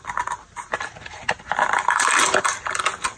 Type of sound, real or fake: real